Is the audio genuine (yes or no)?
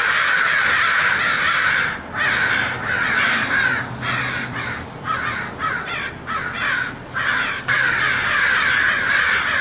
yes